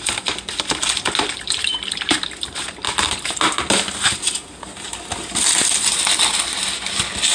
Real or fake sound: real